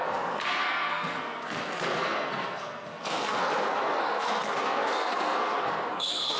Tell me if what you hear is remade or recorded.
remade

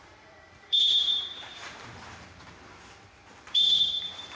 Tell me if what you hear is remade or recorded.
remade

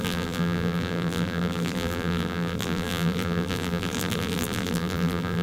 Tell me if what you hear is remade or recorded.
remade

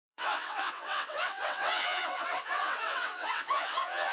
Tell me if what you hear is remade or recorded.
remade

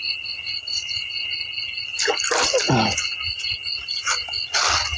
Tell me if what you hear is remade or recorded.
recorded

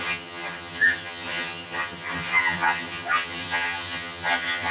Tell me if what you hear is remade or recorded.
remade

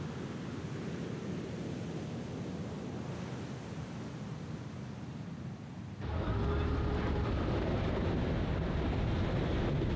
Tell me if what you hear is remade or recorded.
recorded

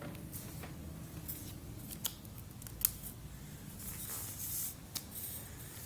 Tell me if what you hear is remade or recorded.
recorded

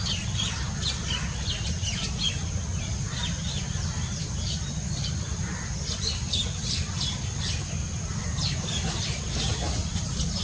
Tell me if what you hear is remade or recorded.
recorded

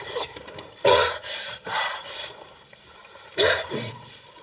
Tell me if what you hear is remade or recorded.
remade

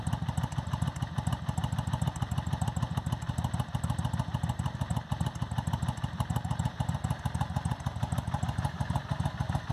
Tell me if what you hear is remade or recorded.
recorded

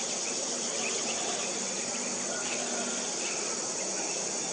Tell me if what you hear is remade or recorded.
recorded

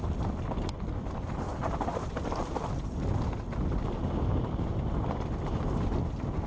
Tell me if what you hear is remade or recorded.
recorded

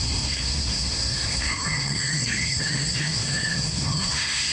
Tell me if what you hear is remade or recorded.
remade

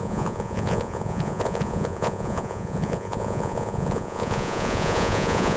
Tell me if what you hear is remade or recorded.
remade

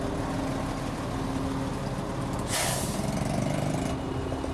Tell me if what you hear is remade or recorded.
recorded